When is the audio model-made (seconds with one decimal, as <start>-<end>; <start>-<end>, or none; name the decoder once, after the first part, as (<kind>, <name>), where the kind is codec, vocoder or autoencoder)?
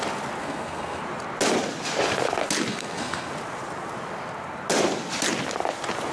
0.4-1.0 (codec, SNAC); 2.7-3.3